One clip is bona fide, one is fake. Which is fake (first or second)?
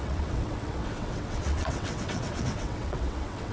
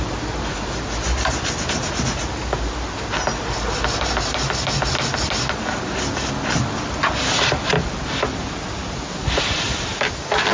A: first